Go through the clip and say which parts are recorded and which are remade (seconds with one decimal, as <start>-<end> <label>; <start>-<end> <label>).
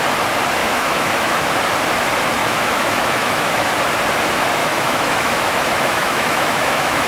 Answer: 0.0-0.6 recorded; 0.6-1.5 remade; 1.5-2.4 recorded; 2.4-3.7 remade; 3.7-4.6 recorded; 4.6-7.1 remade